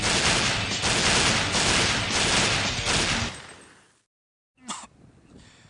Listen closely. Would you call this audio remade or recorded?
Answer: recorded